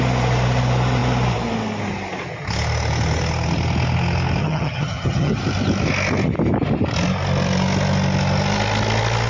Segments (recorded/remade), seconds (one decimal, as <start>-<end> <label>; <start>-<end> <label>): 0.0-4.4 recorded; 4.4-5.4 remade; 5.4-9.3 recorded